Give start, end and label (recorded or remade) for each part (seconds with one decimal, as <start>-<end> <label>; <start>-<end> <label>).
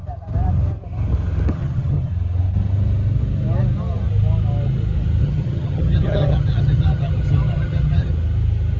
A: 0.0-1.5 recorded; 1.5-2.1 remade; 2.1-5.2 recorded; 5.2-8.1 remade; 8.1-8.8 recorded